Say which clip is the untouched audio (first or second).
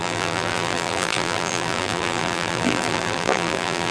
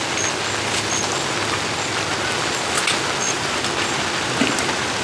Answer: second